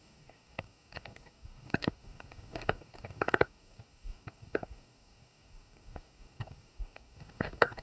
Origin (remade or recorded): remade